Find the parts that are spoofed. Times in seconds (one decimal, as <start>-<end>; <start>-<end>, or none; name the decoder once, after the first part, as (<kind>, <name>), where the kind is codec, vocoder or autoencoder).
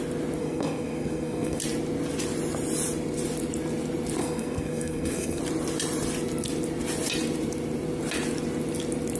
0.4-1.6 (codec, SNAC); 4.2-5.4